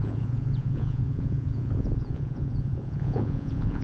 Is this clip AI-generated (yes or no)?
yes